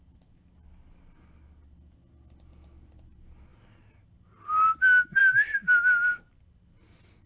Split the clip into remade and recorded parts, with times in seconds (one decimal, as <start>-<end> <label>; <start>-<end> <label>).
0.0-7.3 recorded